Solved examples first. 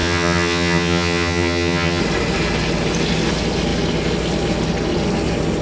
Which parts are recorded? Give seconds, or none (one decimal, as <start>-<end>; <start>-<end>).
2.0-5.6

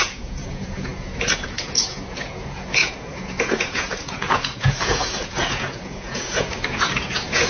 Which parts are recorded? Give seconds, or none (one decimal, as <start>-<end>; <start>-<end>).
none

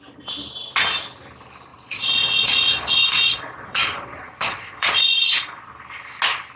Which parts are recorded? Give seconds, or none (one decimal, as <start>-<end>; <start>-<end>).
0.0-1.7; 5.7-6.6

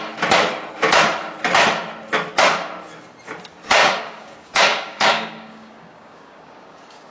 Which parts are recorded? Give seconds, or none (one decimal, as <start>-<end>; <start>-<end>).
0.0-3.8